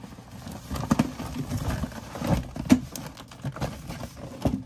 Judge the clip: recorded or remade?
recorded